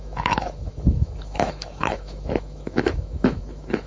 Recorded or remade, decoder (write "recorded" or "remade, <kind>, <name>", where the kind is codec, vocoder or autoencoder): remade, autoencoder, DAC-VAE